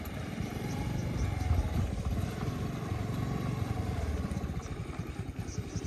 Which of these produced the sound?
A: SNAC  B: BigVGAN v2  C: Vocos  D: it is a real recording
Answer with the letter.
D